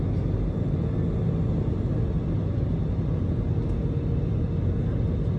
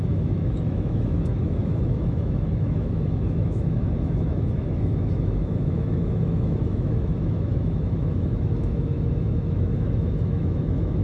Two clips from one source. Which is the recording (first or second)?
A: first